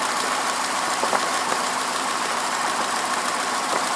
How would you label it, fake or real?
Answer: fake